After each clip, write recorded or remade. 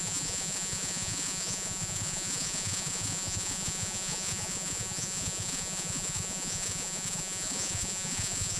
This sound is remade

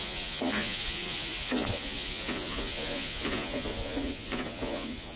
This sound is remade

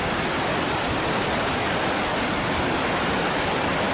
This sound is recorded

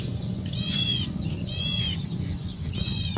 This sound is remade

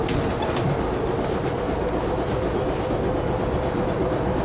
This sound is recorded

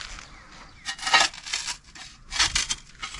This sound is recorded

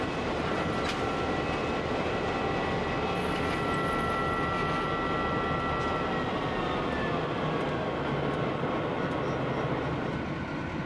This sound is recorded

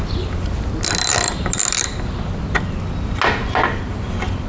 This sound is recorded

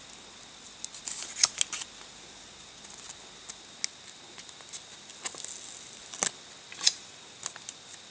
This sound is recorded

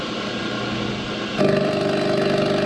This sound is recorded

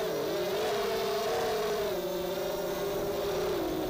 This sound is recorded